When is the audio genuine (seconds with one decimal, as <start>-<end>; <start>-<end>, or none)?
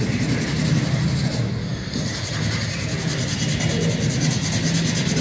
0.0-5.2